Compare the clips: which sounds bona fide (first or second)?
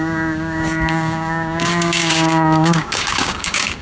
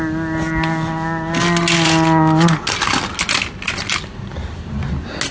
second